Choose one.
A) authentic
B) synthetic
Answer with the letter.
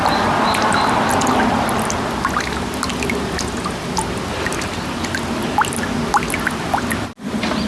A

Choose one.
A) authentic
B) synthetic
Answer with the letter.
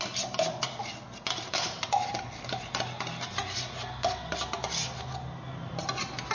A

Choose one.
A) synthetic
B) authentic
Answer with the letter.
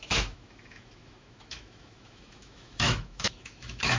A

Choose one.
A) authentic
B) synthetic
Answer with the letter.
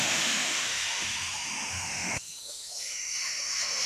B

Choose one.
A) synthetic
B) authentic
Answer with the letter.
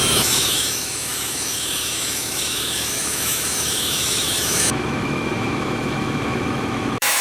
A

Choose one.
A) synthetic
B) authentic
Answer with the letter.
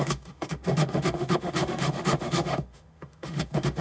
A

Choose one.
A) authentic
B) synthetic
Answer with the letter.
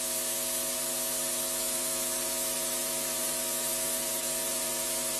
B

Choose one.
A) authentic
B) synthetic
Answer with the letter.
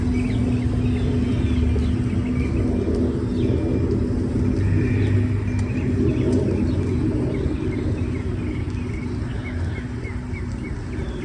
A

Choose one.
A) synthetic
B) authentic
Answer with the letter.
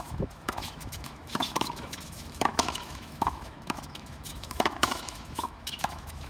A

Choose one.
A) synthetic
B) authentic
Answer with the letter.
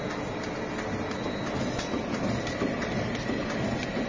B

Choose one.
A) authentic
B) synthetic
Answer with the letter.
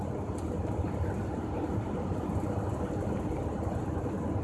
A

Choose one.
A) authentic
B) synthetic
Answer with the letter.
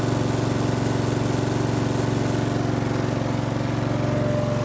A